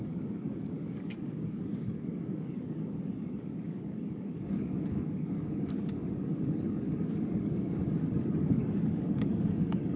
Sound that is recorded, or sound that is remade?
remade